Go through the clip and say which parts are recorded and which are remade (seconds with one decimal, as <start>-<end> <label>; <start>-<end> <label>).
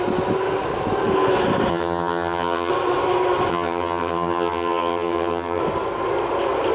0.0-1.7 recorded; 1.7-2.7 remade; 2.7-3.5 recorded; 3.5-5.6 remade; 5.6-6.7 recorded